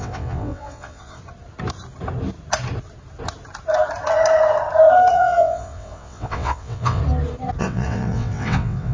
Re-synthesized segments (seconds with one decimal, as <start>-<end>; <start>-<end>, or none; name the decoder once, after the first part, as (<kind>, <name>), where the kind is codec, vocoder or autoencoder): 0.0-1.2 (vocoder, WaveNeXt); 5.1-7.0; 7.6-8.9